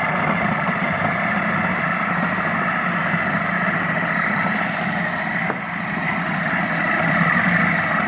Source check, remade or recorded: recorded